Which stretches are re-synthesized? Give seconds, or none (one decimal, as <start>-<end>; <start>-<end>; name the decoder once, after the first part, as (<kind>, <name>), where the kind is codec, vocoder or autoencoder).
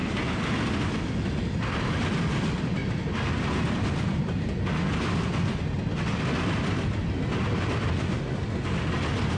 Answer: 0.0-0.8 (vocoder, BigVGAN v2); 2.8-4.7